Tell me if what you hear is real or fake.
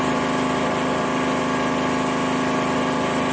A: real